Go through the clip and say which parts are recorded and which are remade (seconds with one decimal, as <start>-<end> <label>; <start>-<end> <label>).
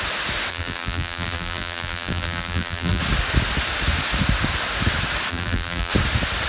0.0-0.5 recorded; 0.5-3.0 remade; 3.0-5.3 recorded; 5.3-5.9 remade; 5.9-6.5 recorded